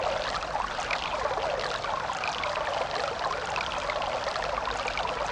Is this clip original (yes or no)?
yes